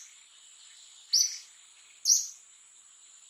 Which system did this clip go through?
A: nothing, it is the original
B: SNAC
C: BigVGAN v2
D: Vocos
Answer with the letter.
A